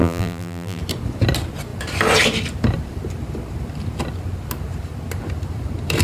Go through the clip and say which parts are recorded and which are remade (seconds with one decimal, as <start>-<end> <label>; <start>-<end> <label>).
0.0-0.8 remade; 0.8-6.0 recorded